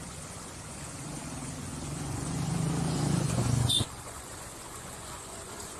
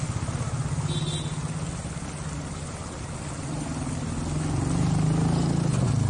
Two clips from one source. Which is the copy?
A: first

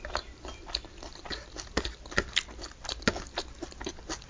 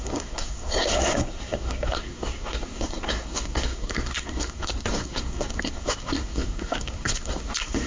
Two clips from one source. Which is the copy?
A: second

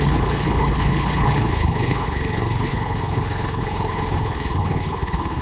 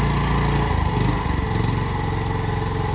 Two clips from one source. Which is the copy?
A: first